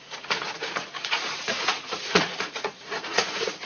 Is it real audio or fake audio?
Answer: fake